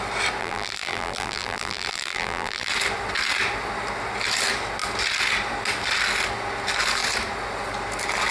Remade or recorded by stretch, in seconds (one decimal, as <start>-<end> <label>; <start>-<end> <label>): 0.0-0.4 recorded; 0.4-2.7 remade; 2.7-8.3 recorded